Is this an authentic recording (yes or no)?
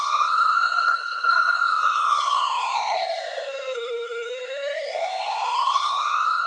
no